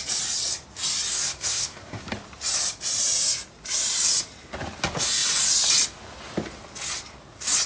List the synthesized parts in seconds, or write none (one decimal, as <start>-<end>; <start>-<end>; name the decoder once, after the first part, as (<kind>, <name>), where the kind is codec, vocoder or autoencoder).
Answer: 1.1-2.0 (codec, SNAC)